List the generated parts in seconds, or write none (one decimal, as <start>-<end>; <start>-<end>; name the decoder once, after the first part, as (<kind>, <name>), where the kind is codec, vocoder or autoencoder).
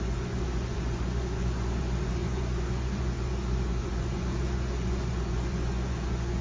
0.0-6.4 (vocoder, Vocos)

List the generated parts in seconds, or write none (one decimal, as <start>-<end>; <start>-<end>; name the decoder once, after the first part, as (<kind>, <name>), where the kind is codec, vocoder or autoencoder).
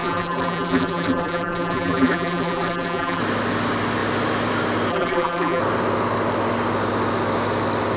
0.0-3.2 (vocoder, BigVGAN v2); 4.9-5.6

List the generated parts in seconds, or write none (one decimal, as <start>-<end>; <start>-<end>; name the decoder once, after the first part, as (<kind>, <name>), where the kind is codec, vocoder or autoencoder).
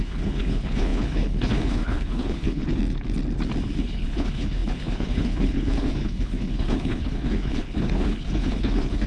0.0-2.8 (codec, HILCodec); 3.8-9.1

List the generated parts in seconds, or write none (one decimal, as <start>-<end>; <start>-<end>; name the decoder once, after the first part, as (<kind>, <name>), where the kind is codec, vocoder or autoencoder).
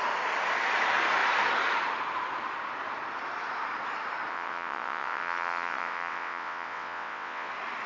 4.3-7.5 (vocoder, WaveNeXt)